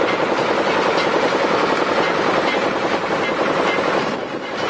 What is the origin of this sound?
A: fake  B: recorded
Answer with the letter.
B